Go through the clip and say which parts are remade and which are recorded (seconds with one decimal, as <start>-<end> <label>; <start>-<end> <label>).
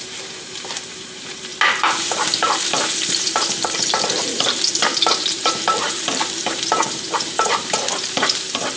0.0-1.5 remade; 1.5-2.0 recorded; 2.0-8.8 remade